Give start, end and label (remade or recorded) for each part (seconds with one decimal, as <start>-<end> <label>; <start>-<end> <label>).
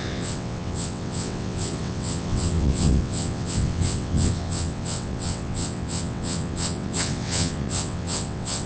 0.0-8.7 remade